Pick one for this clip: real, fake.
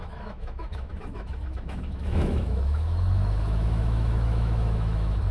fake